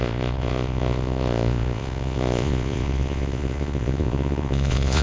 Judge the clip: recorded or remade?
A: remade